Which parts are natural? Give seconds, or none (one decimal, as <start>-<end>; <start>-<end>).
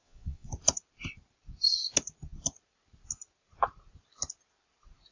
0.5-5.1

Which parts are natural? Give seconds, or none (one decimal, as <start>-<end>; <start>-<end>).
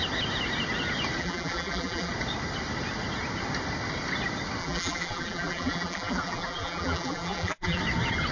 0.0-1.2; 2.1-4.6; 7.8-8.3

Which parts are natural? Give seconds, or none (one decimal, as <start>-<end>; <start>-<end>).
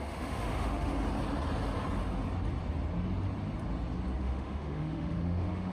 0.9-4.2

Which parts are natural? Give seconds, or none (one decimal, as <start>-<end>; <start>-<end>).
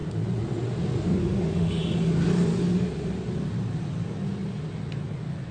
0.0-1.2; 1.8-5.5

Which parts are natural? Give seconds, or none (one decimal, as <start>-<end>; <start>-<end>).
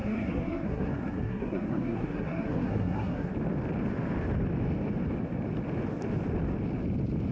3.3-7.3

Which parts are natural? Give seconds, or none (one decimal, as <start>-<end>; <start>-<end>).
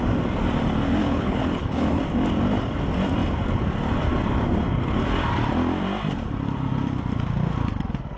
0.0-1.0; 2.0-8.2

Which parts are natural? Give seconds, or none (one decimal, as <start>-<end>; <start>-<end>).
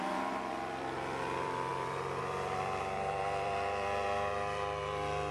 none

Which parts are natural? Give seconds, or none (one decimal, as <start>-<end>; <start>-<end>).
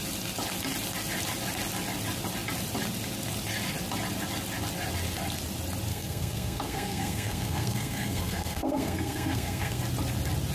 0.0-5.9; 9.8-10.5